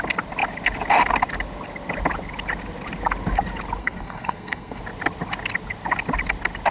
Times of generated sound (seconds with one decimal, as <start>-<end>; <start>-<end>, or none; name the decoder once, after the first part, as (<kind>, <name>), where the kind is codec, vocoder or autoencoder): 3.8-4.8 (codec, SNAC)

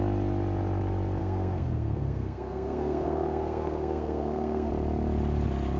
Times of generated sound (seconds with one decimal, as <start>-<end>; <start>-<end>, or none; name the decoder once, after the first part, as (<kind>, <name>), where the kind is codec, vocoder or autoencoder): 1.2-4.7 (codec, SNAC)

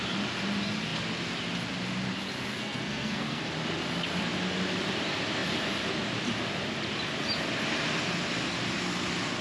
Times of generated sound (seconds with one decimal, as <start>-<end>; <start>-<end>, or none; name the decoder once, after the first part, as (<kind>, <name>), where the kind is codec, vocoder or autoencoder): 2.5-3.5 (codec, SNAC)

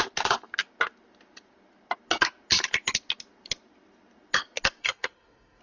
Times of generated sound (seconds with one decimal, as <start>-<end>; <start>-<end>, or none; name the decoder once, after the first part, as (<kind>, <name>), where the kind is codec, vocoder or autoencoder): 4.8-5.6 (codec, SNAC)